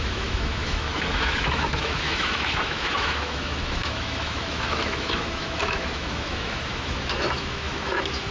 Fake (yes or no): yes